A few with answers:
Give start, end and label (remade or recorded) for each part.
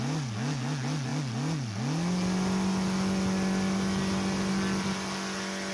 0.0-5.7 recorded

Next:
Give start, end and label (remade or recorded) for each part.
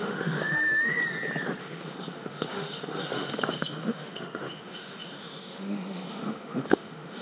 0.0-1.0 remade; 1.0-1.6 recorded; 1.6-7.2 remade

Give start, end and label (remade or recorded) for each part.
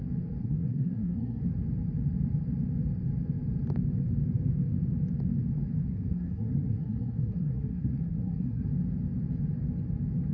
0.0-0.4 recorded; 0.4-1.4 remade; 1.4-5.9 recorded; 5.9-8.7 remade; 8.7-10.3 recorded